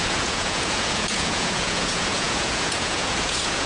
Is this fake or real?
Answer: fake